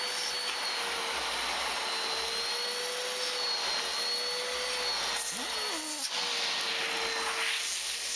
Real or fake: real